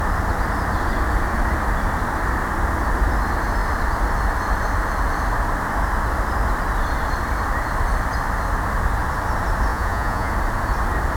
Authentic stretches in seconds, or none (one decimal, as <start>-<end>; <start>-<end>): 0.0-9.7; 10.3-11.2